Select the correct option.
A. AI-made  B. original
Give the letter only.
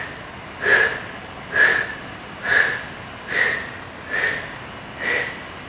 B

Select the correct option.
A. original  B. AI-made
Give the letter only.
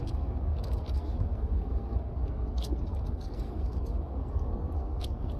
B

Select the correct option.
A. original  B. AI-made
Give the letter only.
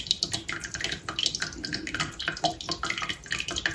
A